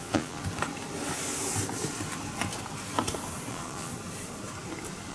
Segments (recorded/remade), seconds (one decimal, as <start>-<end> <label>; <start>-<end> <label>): 0.0-0.4 remade; 0.4-3.5 recorded; 3.5-3.9 remade; 3.9-5.1 recorded